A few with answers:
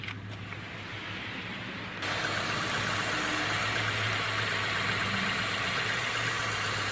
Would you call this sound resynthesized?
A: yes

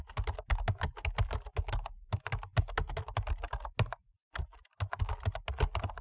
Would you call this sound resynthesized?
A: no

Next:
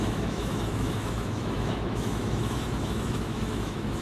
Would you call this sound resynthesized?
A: yes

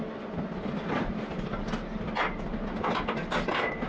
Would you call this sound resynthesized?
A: no